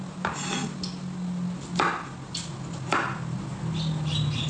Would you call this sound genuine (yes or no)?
yes